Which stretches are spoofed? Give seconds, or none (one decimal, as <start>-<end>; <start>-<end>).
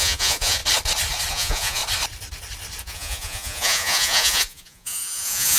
0.0-0.6; 1.3-1.8; 2.8-5.6